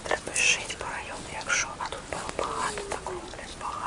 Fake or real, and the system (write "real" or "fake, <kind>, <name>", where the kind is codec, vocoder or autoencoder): real